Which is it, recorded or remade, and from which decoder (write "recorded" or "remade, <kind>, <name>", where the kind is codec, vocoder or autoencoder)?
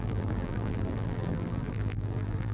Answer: remade, vocoder, BigVGAN v2